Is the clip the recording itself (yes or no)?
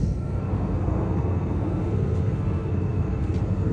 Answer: no